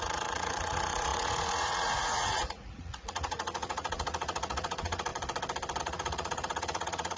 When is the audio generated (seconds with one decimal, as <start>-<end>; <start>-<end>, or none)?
0.0-5.1; 5.8-7.2